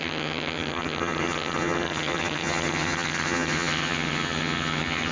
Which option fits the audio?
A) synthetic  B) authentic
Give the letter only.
A